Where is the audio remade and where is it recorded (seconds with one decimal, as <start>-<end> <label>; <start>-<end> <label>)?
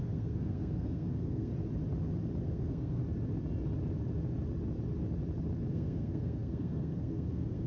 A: 0.0-1.5 remade; 1.5-2.4 recorded; 2.4-3.0 remade; 3.0-5.7 recorded; 5.7-7.7 remade